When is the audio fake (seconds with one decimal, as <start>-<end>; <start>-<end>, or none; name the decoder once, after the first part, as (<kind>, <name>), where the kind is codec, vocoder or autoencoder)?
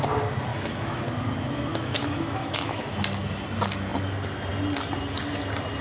0.5-1.0 (autoencoder, DAC-VAE); 1.7-2.8